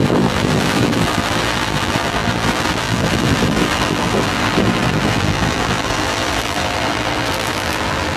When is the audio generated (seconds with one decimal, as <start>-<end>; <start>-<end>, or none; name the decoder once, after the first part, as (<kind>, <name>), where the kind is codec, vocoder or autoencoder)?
0.0-8.2 (vocoder, BigVGAN v2)